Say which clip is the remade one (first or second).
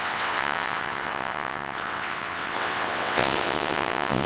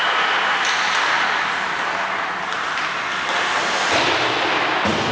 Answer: first